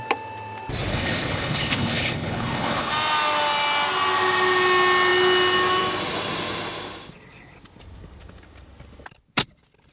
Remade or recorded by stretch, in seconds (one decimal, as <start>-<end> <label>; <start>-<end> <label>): 0.0-0.9 recorded; 0.9-2.9 remade; 2.9-9.9 recorded